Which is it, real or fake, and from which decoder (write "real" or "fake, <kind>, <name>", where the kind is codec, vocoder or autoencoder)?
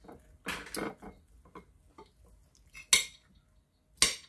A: real